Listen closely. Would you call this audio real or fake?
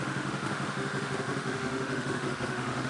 fake